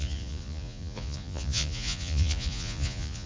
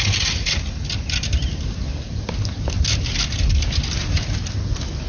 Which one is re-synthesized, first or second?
first